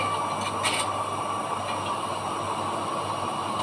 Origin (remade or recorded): recorded